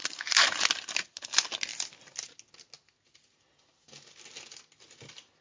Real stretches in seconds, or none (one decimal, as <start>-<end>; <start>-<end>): 0.7-5.4